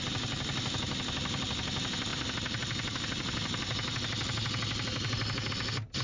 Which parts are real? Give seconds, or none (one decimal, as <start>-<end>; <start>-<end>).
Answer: 0.0-6.0